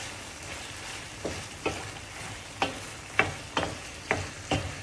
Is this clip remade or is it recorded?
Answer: recorded